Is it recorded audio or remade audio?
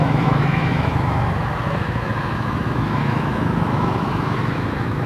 remade